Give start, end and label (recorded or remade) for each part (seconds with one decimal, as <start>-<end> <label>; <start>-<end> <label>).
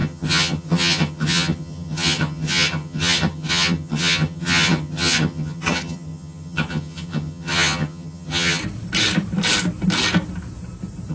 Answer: 0.0-8.6 remade; 8.6-11.1 recorded